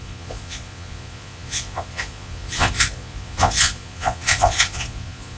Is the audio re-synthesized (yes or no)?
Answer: yes